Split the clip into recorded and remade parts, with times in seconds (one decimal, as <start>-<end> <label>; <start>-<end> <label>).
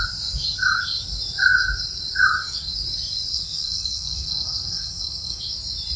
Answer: 0.0-3.3 recorded; 3.3-5.4 remade; 5.4-6.0 recorded